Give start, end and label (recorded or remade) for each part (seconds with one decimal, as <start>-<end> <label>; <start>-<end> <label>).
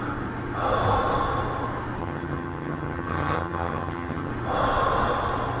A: 0.0-2.0 recorded; 2.0-4.3 remade; 4.3-5.6 recorded